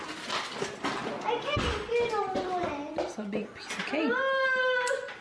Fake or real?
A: real